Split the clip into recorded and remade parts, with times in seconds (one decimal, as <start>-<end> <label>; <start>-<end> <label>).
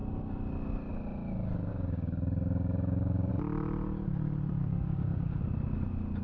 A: 0.0-1.7 recorded; 1.7-3.3 remade; 3.3-4.6 recorded; 4.6-5.4 remade; 5.4-6.2 recorded